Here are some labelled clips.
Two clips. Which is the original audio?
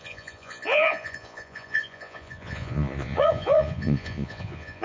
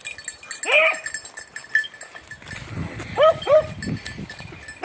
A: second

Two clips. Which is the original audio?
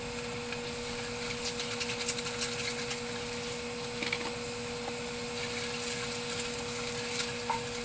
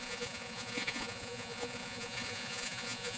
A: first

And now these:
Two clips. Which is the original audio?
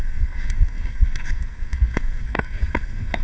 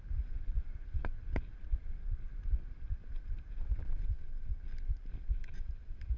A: second